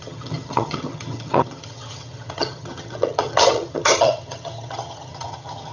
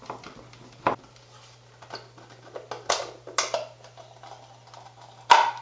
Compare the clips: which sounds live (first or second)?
second